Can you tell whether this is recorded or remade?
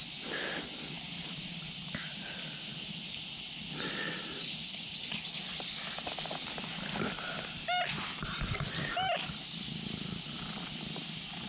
recorded